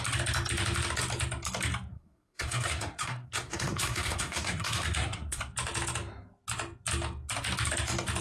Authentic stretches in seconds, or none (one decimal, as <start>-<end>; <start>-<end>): 0.0-1.9; 5.4-8.2